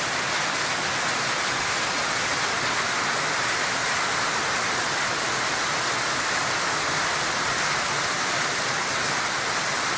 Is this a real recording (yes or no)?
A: yes